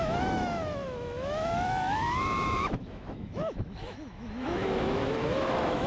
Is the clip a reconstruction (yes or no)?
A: yes